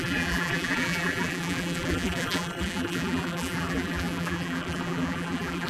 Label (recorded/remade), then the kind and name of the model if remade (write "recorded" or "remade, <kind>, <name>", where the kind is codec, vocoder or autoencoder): remade, vocoder, BigVGAN v2